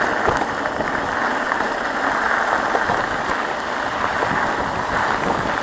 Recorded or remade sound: recorded